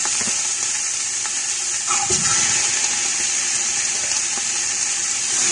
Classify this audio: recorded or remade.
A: recorded